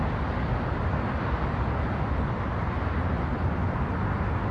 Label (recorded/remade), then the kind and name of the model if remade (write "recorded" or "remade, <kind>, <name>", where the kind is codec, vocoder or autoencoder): recorded